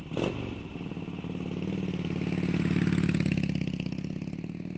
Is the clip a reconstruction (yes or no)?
no